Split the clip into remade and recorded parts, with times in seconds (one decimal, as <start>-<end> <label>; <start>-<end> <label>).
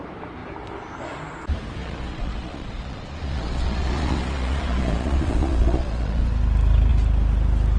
0.0-1.8 recorded; 1.8-6.2 remade; 6.2-7.8 recorded